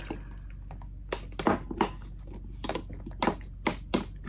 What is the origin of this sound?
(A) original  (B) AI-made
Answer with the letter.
A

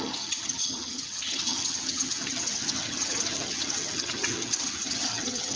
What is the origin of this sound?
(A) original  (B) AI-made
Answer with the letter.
B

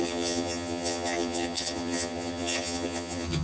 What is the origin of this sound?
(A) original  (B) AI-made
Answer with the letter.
B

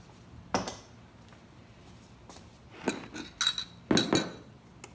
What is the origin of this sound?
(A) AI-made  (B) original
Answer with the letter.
B